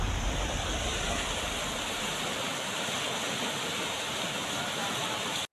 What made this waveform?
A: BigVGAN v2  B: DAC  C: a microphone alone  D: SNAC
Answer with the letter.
C